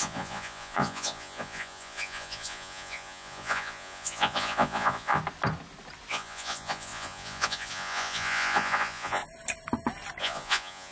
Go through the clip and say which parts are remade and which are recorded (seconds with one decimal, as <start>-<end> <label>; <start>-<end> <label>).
0.0-5.2 remade; 5.2-6.1 recorded; 6.1-9.2 remade; 9.2-10.2 recorded; 10.2-10.9 remade